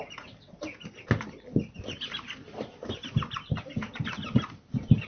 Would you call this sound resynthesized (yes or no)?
no